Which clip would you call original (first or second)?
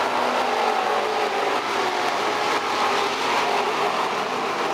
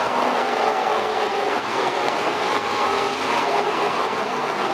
first